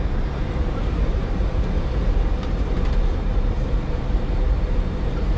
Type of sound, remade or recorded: remade